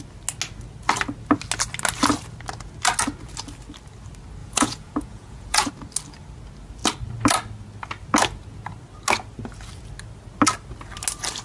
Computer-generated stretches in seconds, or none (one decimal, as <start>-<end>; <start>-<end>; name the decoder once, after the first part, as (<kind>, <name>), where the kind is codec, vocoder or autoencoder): 4.4-5.7 (vocoder, Vocos)

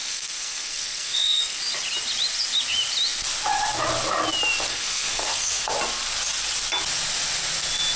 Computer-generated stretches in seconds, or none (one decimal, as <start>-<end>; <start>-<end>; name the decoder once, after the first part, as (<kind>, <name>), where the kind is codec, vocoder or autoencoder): 0.0-1.6 (codec, SNAC); 4.7-5.7

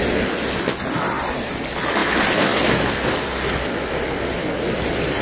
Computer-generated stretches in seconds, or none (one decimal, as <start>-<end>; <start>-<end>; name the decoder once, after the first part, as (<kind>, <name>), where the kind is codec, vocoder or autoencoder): none

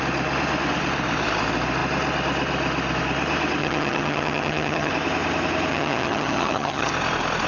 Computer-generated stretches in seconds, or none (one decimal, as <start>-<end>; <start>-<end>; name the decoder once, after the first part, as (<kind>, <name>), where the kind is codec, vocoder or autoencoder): 3.6-4.9 (vocoder, HiFi-GAN); 5.7-6.9